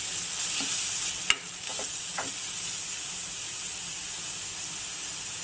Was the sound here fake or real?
real